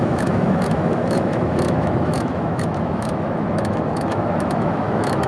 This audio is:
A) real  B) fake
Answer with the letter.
B